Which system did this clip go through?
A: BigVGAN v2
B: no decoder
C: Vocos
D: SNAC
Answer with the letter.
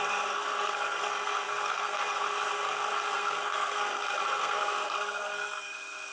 D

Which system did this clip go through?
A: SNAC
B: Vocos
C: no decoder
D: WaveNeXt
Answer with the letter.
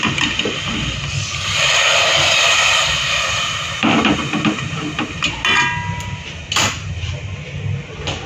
C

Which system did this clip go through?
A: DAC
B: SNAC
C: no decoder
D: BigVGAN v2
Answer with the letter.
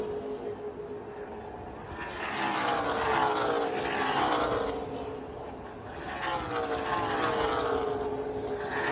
C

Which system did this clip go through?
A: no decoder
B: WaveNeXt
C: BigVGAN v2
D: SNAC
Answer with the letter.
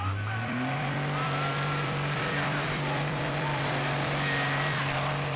C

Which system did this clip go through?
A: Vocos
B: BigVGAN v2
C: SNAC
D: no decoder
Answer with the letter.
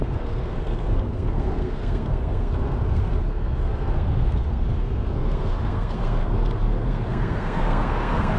C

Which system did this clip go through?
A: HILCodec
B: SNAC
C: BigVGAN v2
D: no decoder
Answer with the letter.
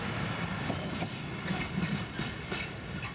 D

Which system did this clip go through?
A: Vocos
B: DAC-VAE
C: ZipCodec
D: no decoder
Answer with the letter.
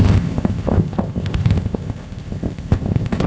C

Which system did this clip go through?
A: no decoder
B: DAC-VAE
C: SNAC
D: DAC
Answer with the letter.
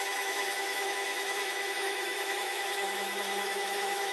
B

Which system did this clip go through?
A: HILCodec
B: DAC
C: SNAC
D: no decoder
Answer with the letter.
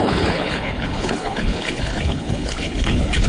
A